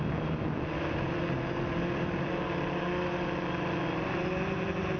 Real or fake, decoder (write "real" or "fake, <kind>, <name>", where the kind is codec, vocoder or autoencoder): real